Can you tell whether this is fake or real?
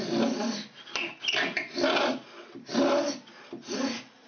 real